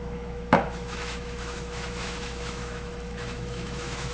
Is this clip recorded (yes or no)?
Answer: no